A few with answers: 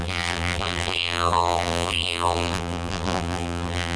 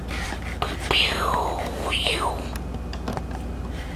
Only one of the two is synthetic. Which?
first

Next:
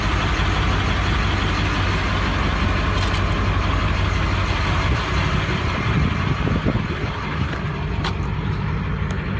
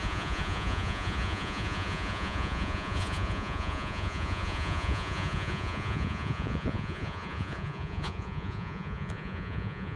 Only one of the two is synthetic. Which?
second